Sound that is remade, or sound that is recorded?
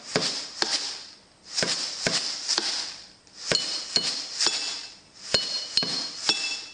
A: recorded